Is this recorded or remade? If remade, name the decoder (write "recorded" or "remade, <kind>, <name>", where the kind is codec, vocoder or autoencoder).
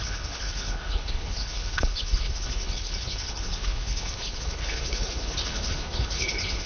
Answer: remade, codec, HILCodec